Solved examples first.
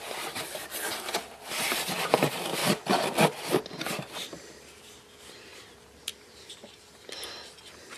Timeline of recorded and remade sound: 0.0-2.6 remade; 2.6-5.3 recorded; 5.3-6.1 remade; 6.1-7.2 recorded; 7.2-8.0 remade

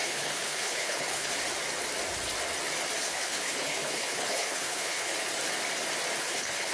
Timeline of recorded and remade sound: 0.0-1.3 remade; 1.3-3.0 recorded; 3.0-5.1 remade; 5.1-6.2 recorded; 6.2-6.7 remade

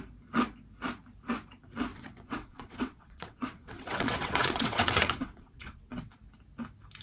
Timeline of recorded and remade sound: 0.0-1.9 recorded; 1.9-6.1 remade; 6.1-7.0 recorded

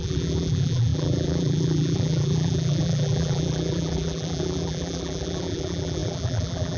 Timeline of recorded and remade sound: 0.0-6.8 remade

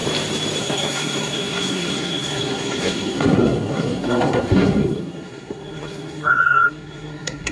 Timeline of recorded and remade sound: 0.0-0.6 recorded; 0.6-7.5 remade